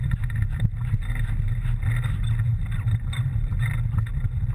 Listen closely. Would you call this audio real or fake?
real